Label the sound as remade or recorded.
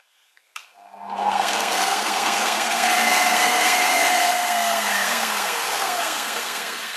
remade